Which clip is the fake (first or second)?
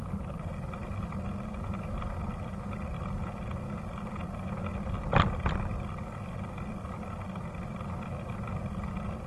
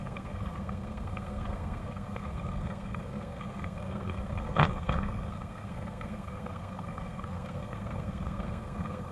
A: second